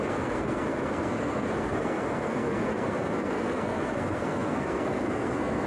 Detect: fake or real fake